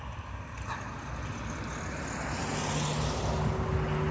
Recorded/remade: recorded